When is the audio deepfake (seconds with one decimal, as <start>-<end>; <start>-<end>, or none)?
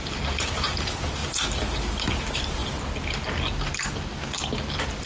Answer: 0.0-1.2; 2.1-2.6